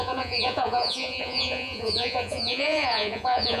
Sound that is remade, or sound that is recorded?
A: remade